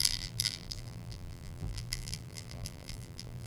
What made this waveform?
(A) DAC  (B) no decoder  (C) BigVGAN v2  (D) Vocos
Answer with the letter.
C